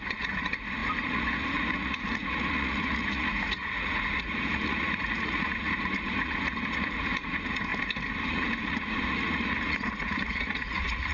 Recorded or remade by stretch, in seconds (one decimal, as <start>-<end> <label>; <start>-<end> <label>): 0.0-7.7 remade; 7.7-8.3 recorded; 8.3-11.1 remade